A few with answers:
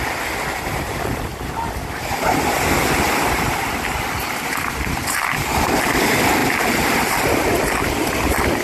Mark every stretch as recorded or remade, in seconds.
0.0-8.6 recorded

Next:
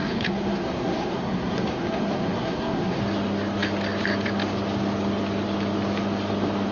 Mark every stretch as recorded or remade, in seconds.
0.0-3.0 remade; 3.0-6.7 recorded

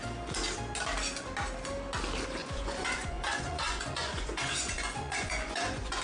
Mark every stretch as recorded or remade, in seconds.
0.0-2.4 recorded; 2.4-6.0 remade

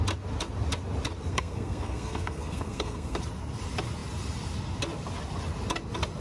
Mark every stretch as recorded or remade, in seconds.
0.0-1.3 recorded; 1.3-3.2 remade; 3.2-6.2 recorded

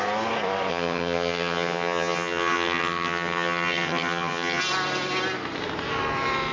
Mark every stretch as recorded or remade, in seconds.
0.0-0.7 recorded; 0.7-4.6 remade; 4.6-6.5 recorded

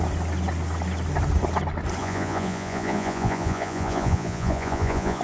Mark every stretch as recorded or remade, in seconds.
0.0-2.0 recorded; 2.0-5.2 remade